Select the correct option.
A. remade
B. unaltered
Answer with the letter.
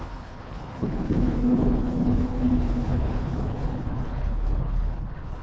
A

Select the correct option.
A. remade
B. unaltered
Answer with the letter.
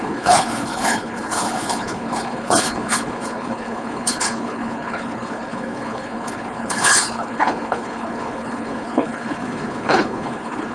A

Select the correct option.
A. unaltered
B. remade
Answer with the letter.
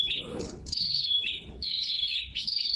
B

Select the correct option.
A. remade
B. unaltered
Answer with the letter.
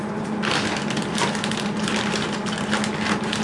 B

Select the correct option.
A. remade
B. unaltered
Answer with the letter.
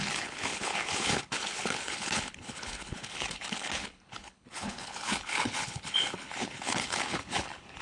A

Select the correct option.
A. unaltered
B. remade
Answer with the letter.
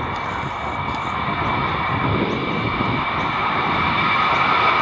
A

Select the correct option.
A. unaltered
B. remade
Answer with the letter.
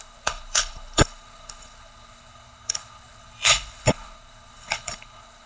B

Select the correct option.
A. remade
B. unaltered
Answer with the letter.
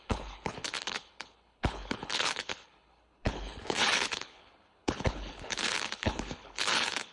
A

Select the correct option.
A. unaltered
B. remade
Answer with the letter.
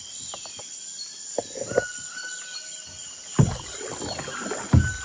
A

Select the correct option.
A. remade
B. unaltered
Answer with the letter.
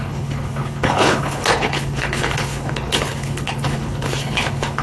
A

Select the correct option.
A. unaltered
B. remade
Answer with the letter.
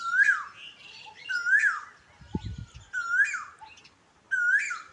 A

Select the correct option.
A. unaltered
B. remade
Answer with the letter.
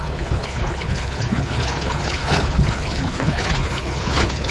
B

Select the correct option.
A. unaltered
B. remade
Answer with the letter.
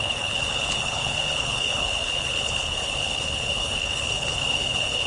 B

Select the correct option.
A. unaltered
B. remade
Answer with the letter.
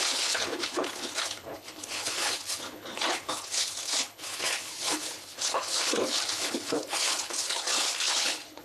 B